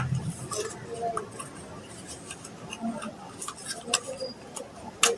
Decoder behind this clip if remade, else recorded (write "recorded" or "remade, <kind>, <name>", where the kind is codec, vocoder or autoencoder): recorded